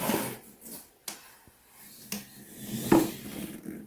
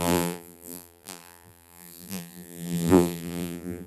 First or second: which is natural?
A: first